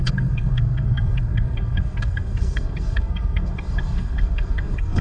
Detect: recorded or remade remade